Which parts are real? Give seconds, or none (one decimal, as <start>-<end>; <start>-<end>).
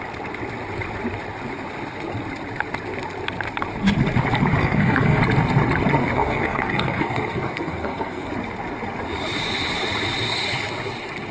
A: 0.0-4.6; 5.2-6.0; 8.3-11.3